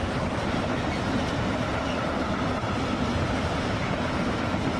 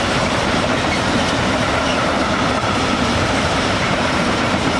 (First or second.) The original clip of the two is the first